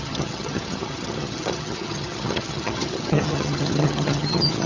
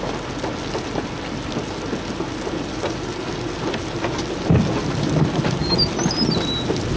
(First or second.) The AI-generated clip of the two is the first